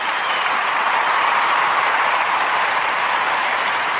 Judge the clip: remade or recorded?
remade